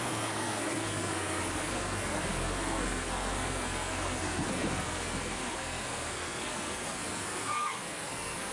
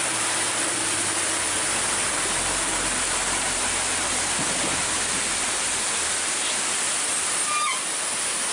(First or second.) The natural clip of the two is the second